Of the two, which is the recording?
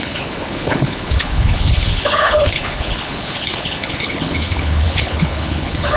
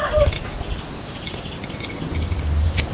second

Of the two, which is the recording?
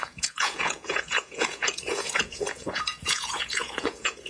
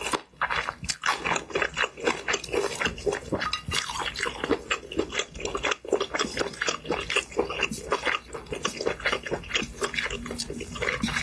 second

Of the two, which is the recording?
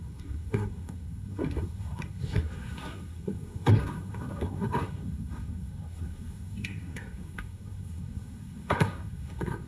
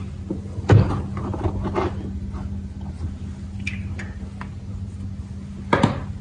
second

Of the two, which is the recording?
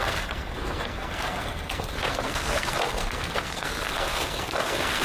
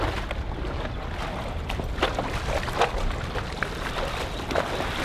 second